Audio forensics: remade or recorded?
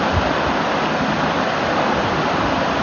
recorded